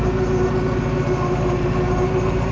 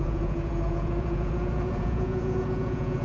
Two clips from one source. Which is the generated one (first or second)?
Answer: second